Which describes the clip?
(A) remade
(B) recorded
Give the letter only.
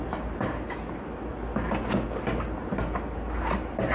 B